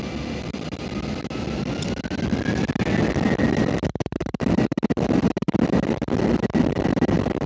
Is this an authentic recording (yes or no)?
yes